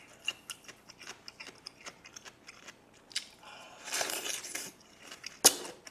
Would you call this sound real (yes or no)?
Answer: yes